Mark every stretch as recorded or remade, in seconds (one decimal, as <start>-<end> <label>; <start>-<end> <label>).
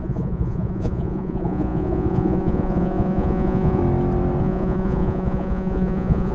0.0-3.8 remade; 3.8-4.4 recorded; 4.4-6.3 remade